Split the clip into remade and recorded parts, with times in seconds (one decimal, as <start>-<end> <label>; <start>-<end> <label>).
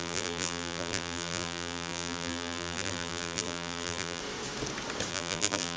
0.0-4.2 remade; 4.2-5.1 recorded; 5.1-5.8 remade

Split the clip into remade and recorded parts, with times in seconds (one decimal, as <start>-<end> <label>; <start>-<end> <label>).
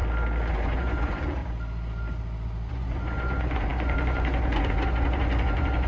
0.0-0.5 recorded; 0.5-1.4 remade; 1.4-2.7 recorded; 2.7-5.9 remade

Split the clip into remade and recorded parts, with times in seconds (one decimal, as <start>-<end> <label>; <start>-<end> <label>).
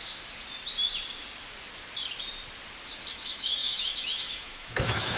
0.0-3.1 recorded; 3.1-5.2 remade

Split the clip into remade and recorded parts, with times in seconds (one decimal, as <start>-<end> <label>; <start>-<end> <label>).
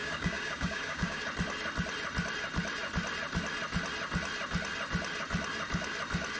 0.0-1.2 remade; 1.2-6.4 recorded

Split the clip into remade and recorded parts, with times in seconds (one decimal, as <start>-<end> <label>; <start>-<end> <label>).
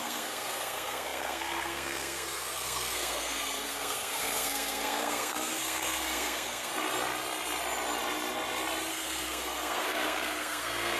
0.0-6.7 remade; 6.7-8.9 recorded; 8.9-11.0 remade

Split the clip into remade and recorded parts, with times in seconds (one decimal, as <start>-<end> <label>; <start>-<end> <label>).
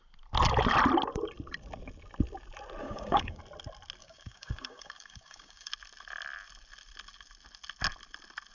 0.0-2.8 recorded; 2.8-3.4 remade; 3.4-4.0 recorded; 4.0-5.7 remade; 5.7-8.5 recorded